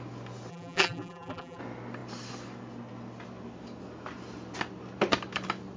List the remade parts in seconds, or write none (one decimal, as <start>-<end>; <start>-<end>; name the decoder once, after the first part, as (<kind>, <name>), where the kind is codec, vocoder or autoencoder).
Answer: 0.5-1.6 (vocoder, BigVGAN v2)